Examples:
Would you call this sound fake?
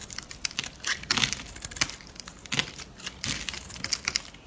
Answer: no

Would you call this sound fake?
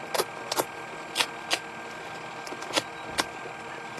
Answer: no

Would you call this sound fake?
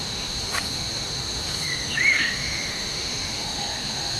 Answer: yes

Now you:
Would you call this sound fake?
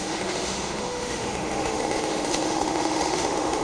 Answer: yes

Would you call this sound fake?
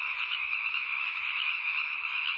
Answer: yes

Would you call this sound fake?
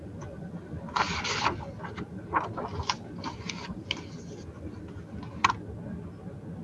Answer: no